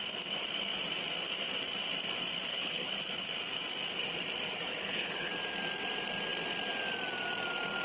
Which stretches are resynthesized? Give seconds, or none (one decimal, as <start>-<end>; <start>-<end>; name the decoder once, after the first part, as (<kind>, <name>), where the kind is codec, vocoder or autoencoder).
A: 2.5-3.0 (codec, HILCodec); 4.7-5.3